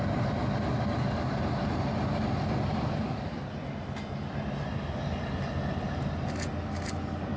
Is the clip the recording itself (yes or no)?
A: yes